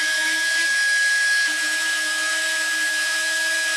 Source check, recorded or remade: remade